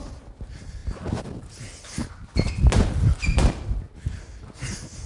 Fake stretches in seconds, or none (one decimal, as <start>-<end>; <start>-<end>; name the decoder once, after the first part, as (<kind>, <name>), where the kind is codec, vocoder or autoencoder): none